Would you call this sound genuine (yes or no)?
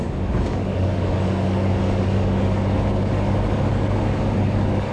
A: no